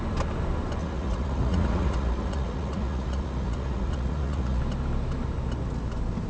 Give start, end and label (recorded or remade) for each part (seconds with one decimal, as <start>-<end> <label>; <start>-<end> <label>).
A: 0.0-0.8 recorded; 0.8-4.6 remade; 4.6-6.3 recorded